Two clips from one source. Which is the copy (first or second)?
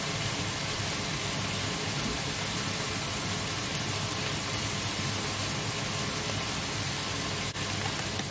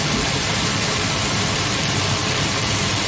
second